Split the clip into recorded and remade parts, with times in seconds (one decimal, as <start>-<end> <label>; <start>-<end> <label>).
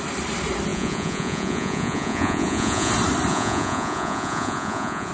0.0-0.7 recorded; 0.7-2.9 remade; 2.9-3.3 recorded; 3.3-5.1 remade